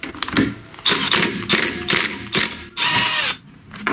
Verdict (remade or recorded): recorded